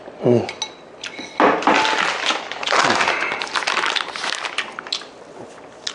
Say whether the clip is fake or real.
real